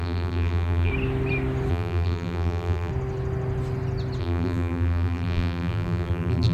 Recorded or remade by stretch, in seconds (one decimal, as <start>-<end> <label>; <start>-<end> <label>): 0.0-0.9 remade; 0.9-1.7 recorded; 1.7-2.9 remade; 2.9-4.2 recorded; 4.2-6.5 remade